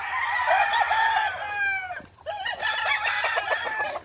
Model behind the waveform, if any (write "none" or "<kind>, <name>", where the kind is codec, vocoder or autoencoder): none